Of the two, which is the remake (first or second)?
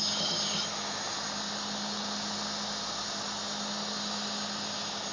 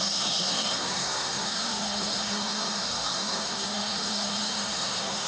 second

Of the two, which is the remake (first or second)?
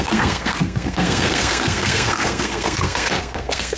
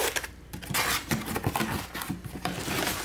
first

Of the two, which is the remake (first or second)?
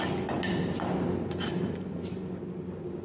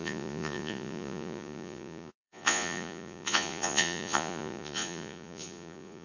second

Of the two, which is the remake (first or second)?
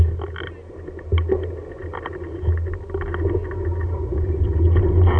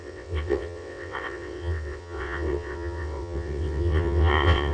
second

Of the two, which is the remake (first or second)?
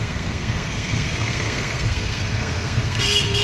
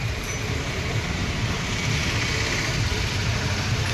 first